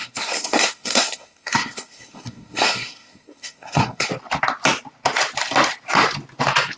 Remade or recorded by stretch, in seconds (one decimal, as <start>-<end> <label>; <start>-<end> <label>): 0.0-4.1 remade; 4.1-6.8 recorded